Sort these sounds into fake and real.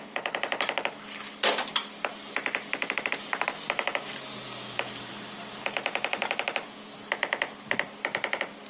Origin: real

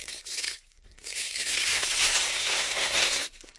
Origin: fake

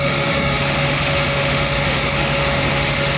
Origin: fake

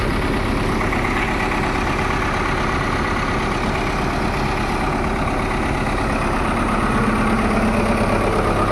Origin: real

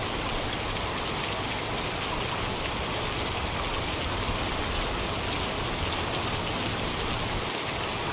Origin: real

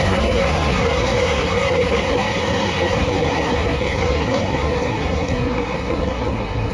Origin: fake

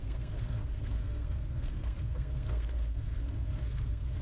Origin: fake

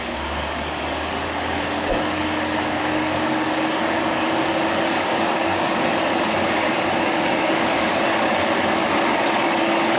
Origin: fake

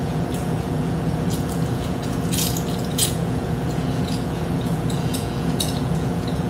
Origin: fake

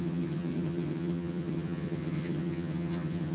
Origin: fake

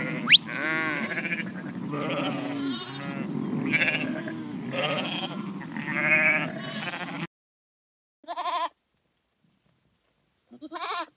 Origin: real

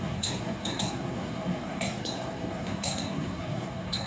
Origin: fake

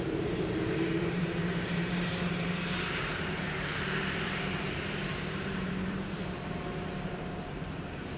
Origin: fake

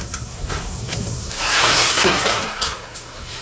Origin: fake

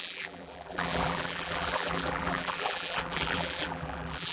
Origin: fake